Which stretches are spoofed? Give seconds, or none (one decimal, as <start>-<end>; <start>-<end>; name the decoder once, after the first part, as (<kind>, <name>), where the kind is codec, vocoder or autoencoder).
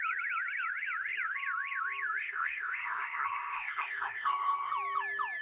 2.2-4.7 (codec, SNAC)